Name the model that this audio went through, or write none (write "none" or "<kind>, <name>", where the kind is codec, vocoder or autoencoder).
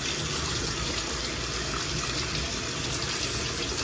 none